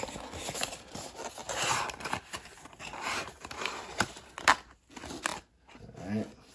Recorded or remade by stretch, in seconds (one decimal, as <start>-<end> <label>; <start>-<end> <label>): 0.0-1.4 recorded; 1.4-4.4 remade; 4.4-5.3 recorded; 5.3-5.8 remade; 5.8-6.5 recorded